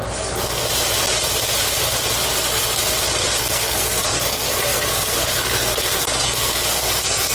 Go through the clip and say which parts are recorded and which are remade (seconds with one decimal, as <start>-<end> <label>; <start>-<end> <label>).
0.0-0.6 remade; 0.6-3.4 recorded; 3.4-7.3 remade